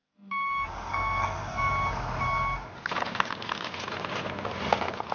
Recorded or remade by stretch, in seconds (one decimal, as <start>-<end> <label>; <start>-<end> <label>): 0.0-1.7 remade; 1.7-5.1 recorded